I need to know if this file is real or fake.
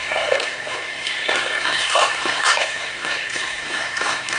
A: fake